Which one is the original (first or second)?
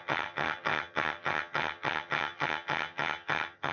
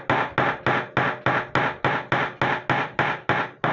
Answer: second